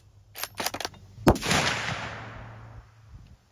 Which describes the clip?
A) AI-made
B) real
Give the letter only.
B